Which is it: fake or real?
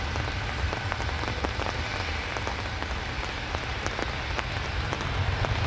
real